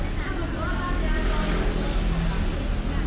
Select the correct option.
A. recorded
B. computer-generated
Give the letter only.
A